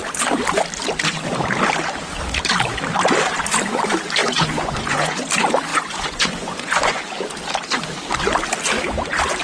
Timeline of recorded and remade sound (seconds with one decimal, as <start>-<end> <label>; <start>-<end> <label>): 0.0-4.2 recorded; 4.2-5.3 remade; 5.3-5.7 recorded; 5.7-7.0 remade; 7.0-9.4 recorded